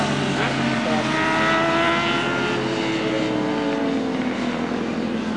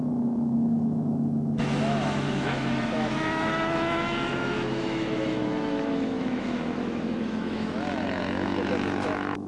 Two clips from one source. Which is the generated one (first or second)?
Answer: second